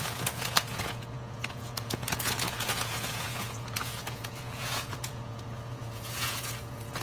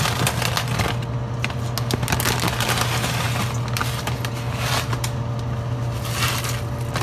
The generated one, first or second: first